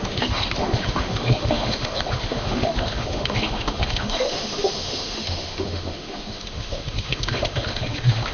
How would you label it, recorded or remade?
remade